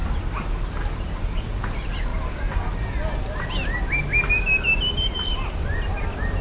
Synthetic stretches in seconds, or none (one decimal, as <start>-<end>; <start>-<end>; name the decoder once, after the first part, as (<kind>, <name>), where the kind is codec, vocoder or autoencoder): none